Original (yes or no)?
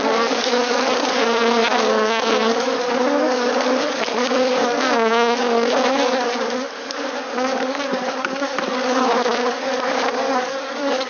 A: no